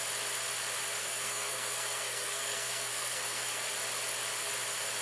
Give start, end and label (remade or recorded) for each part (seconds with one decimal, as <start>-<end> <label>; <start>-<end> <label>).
0.0-1.0 recorded; 1.0-3.7 remade; 3.7-5.0 recorded